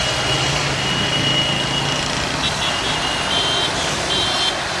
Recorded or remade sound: recorded